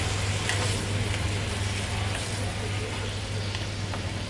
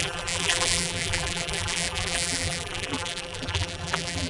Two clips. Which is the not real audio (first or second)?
second